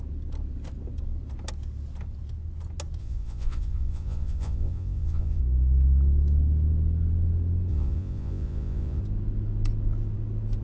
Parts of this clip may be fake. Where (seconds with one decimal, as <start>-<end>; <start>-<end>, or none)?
3.0-5.4; 7.7-9.0